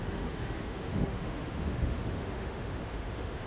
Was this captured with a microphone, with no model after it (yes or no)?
no